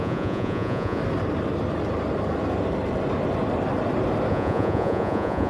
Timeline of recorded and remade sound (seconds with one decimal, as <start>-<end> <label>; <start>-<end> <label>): 0.0-1.0 remade; 1.0-4.3 recorded; 4.3-5.5 remade